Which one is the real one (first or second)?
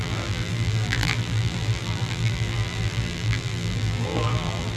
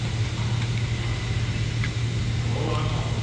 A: second